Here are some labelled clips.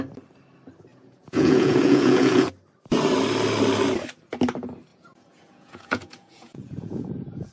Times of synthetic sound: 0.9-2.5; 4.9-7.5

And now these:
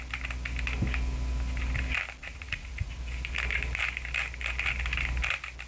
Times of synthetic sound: 2.2-2.9

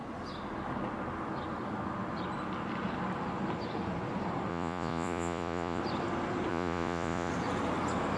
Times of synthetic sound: 4.5-5.8; 6.5-7.3

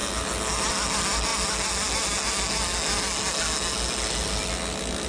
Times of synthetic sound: none

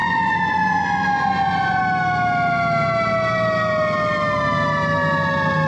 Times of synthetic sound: 0.0-1.8